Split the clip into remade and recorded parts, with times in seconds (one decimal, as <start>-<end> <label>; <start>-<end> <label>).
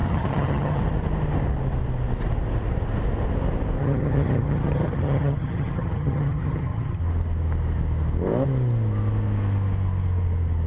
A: 0.0-0.8 remade; 0.8-3.8 recorded; 3.8-7.0 remade; 7.0-10.7 recorded